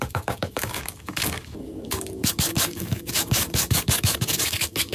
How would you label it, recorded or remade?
remade